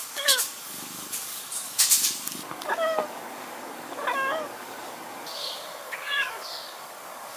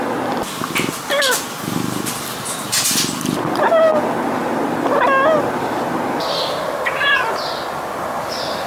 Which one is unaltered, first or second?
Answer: second